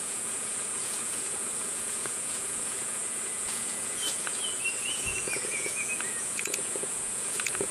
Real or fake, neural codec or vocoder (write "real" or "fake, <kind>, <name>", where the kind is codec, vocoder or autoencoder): fake, vocoder, Vocos